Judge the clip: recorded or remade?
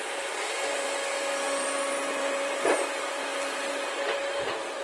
recorded